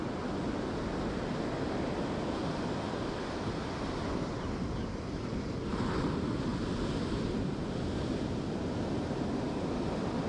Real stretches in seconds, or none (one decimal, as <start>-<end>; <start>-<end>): 0.0-10.3